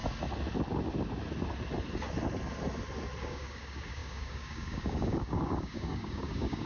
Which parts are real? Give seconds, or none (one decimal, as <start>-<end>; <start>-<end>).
0.0-3.2